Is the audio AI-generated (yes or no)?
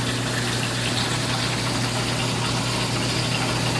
no